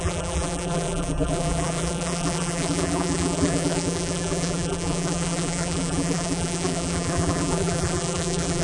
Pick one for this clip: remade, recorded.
remade